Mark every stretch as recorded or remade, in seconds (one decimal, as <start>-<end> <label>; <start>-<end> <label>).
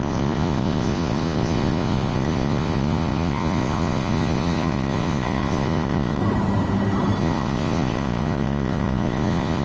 0.0-6.2 remade; 6.2-7.2 recorded; 7.2-9.6 remade